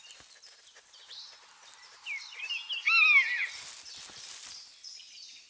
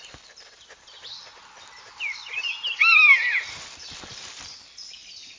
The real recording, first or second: first